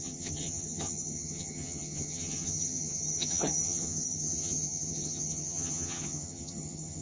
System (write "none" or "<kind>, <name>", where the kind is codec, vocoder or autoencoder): vocoder, HiFi-GAN